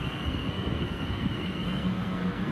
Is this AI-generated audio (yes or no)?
yes